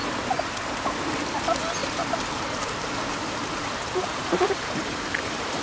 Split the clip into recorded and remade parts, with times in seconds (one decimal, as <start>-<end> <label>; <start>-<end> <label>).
0.0-0.5 remade; 0.5-1.8 recorded; 1.8-5.6 remade